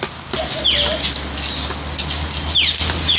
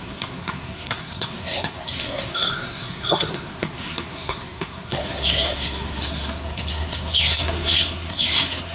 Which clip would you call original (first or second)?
first